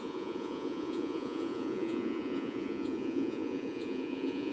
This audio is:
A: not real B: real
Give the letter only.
A